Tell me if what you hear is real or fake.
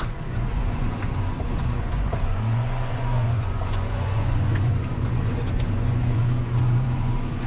fake